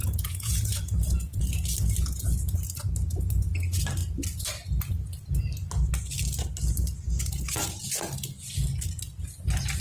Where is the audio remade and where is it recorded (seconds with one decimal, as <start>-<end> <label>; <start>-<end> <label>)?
0.0-1.4 remade; 1.4-9.8 recorded